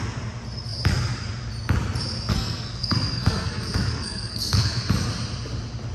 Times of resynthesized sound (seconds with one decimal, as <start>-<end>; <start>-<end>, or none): 2.3-4.8